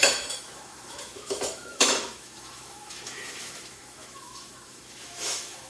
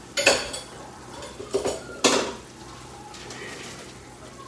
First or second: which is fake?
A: first